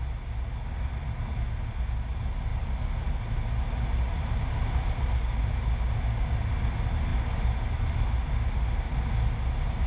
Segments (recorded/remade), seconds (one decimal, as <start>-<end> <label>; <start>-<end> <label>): 0.0-9.9 recorded